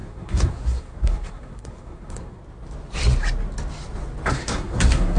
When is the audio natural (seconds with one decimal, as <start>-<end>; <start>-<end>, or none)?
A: 2.4-4.3